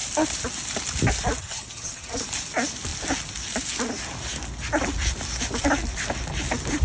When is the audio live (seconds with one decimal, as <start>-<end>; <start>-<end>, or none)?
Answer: 0.0-1.4; 2.2-6.8